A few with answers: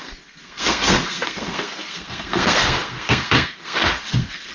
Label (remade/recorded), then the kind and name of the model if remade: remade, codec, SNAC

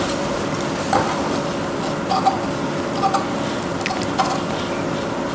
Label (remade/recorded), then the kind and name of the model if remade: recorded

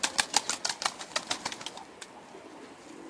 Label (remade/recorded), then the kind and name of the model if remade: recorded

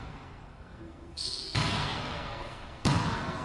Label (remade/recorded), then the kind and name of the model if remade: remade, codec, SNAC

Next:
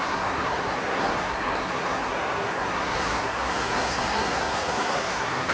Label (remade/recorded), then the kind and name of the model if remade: remade, codec, SNAC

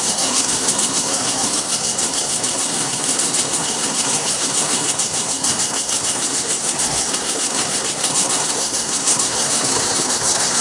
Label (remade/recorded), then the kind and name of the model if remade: remade, codec, SNAC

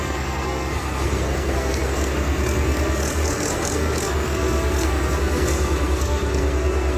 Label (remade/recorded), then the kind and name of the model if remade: remade, codec, SNAC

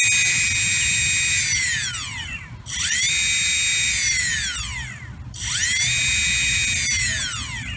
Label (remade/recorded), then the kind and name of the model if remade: recorded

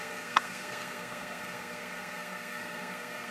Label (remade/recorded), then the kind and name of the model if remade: remade, codec, SNAC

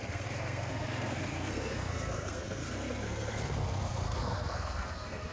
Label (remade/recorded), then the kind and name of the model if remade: remade, codec, SNAC